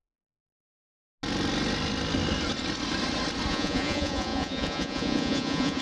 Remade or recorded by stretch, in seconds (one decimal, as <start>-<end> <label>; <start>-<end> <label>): 0.0-3.5 recorded; 3.5-5.8 remade